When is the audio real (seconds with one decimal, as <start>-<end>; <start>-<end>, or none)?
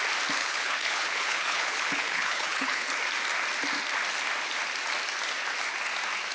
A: 0.0-0.4; 2.9-6.3